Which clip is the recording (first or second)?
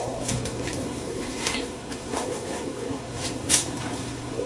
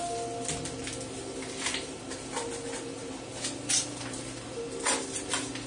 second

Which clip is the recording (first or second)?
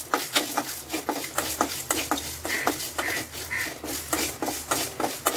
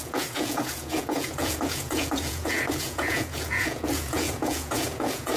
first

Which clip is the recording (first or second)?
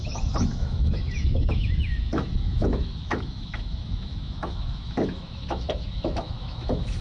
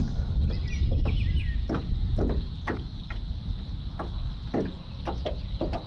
second